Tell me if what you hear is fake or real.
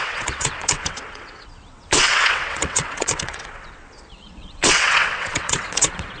fake